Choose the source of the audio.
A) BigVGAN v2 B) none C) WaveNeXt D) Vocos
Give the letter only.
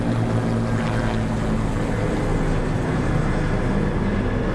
B